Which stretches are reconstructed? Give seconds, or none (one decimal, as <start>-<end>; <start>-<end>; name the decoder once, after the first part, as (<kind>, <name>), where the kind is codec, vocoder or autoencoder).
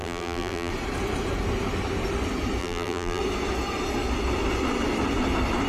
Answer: 0.0-0.7 (vocoder, BigVGAN v2); 2.6-3.2